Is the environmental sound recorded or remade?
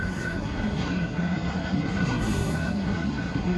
remade